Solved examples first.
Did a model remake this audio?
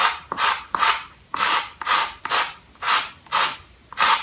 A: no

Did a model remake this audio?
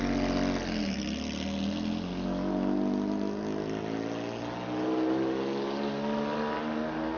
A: no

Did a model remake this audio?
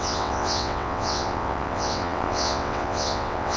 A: yes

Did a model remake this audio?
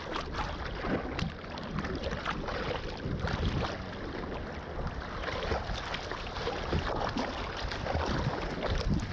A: no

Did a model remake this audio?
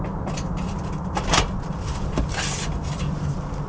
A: no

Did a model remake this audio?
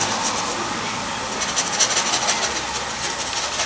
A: no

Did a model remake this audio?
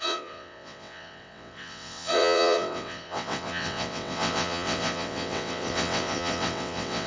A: yes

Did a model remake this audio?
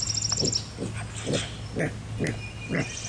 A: no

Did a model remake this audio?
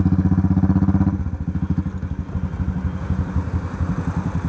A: no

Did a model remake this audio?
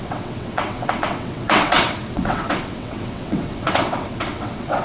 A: yes